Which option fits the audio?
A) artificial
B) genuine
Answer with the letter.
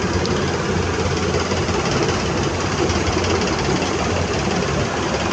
B